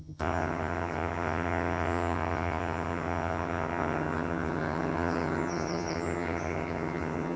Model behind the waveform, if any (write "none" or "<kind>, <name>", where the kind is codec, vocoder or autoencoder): vocoder, HiFi-GAN